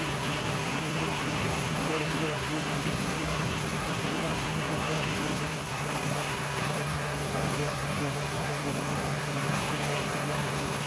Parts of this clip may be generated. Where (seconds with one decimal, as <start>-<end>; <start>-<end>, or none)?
0.0-10.9